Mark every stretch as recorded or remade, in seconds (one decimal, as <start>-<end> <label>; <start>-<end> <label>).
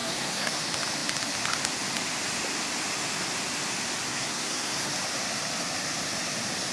0.0-0.6 remade; 0.6-4.1 recorded; 4.1-4.9 remade; 4.9-6.7 recorded